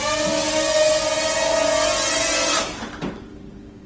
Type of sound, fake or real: real